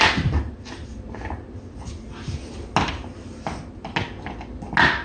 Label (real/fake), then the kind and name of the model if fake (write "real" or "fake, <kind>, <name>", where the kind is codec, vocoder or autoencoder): real